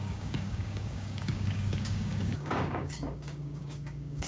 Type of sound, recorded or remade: remade